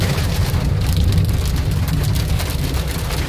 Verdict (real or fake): real